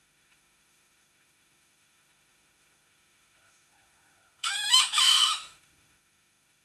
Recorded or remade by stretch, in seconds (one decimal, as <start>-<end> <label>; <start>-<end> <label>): 0.0-6.6 remade